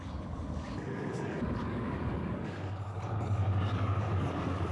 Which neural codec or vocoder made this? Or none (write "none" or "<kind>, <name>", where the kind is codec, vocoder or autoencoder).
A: codec, DAC